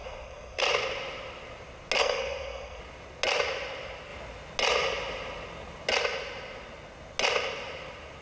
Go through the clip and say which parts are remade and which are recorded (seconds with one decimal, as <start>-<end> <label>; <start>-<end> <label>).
0.0-0.6 remade; 0.6-2.0 recorded; 2.0-2.8 remade; 2.8-8.2 recorded